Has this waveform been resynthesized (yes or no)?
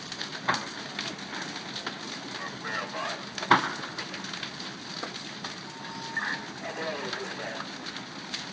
no